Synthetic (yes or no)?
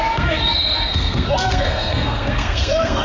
yes